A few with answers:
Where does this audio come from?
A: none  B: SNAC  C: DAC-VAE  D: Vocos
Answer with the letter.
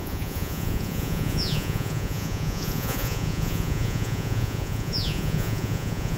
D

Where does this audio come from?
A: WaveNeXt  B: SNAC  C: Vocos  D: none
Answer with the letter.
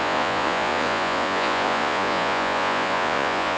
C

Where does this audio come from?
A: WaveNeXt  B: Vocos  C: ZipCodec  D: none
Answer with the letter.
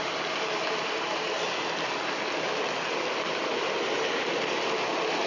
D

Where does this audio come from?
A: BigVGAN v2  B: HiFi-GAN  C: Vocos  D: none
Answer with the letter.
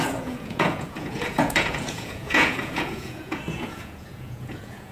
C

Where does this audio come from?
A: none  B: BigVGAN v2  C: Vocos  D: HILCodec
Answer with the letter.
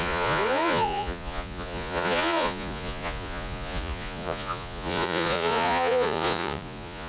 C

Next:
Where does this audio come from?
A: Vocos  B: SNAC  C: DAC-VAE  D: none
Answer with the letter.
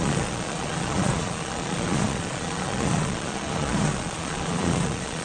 A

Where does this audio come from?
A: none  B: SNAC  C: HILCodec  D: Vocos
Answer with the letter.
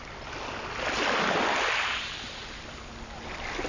A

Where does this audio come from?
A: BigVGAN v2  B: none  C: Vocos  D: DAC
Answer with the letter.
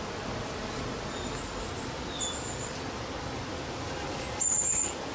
B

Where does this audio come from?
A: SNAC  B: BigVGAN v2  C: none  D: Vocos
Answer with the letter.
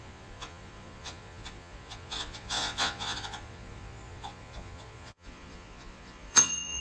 D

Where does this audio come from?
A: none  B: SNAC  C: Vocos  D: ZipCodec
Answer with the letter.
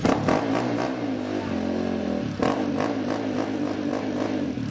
A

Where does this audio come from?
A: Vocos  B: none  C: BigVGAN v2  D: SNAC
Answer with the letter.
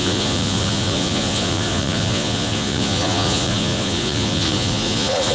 A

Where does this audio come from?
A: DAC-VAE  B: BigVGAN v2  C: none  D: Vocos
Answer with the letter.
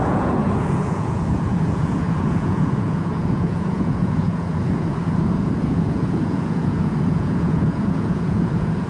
D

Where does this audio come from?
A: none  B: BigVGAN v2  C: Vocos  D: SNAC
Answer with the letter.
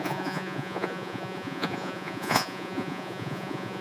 C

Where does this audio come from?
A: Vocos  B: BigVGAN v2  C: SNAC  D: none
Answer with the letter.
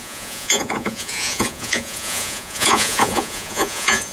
A